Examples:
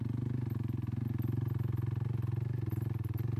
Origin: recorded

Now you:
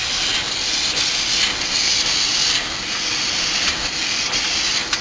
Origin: recorded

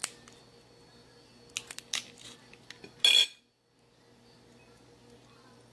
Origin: recorded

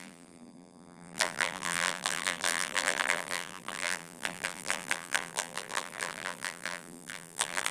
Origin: remade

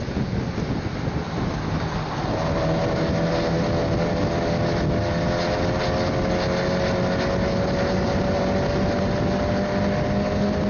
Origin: recorded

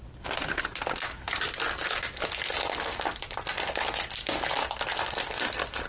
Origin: recorded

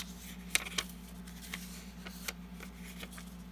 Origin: recorded